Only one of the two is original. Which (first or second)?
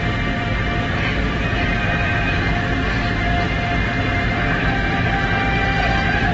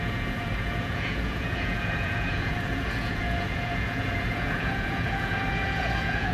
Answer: first